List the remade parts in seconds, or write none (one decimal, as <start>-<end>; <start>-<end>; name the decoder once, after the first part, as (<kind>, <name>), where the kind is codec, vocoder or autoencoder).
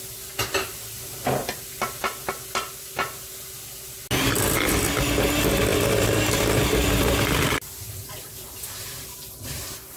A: 5.7-9.5 (vocoder, BigVGAN v2)